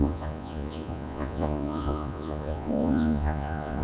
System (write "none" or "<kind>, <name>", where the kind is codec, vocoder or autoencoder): vocoder, Vocos